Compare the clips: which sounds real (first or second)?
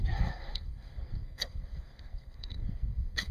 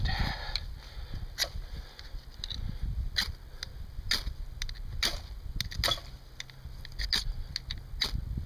second